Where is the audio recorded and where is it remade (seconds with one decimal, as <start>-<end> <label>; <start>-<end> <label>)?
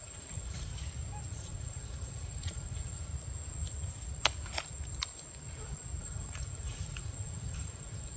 0.0-0.7 remade; 0.7-1.3 recorded; 1.3-3.1 remade; 3.1-6.0 recorded; 6.0-8.2 remade